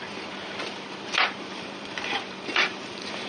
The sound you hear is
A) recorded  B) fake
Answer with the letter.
B